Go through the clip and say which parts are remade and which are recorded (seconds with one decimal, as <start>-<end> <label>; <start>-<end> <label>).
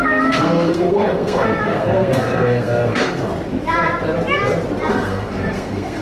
0.0-3.3 remade; 3.3-4.9 recorded; 4.9-6.0 remade